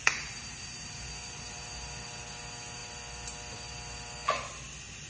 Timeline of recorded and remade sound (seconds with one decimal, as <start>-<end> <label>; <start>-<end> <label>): 0.0-5.1 recorded